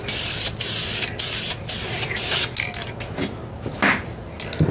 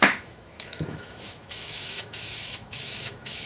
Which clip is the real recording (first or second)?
first